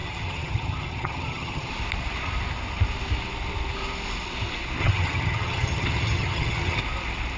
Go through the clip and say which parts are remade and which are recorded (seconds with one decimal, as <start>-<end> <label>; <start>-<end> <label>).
0.0-1.7 remade; 1.7-4.8 recorded; 4.8-6.8 remade; 6.8-7.4 recorded